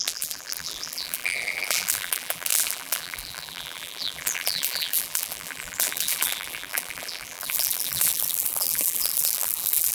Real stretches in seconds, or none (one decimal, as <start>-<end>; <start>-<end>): none